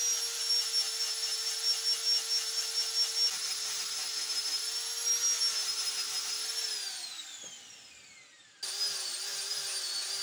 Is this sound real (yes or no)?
yes